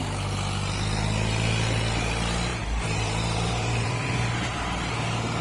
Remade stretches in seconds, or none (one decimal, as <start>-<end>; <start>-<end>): 2.5-4.9